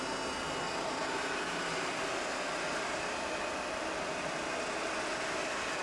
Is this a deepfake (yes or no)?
no